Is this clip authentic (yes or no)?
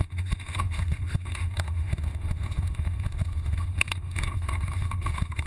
no